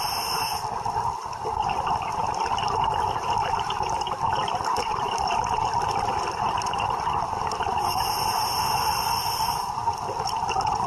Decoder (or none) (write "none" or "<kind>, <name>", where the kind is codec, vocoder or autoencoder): none